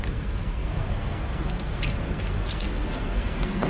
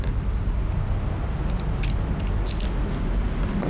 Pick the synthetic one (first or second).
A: first